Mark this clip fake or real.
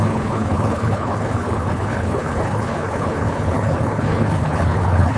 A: fake